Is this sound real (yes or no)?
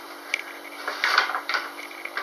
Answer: no